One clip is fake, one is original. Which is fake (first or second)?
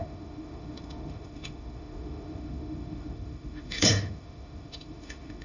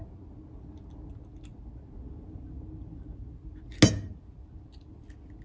first